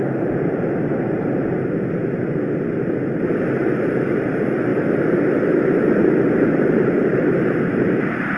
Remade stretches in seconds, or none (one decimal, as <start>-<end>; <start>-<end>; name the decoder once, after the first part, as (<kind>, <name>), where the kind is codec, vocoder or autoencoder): none